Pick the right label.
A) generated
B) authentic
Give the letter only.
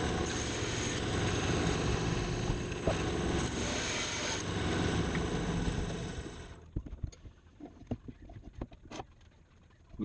B